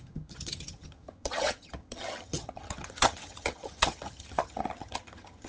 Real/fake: fake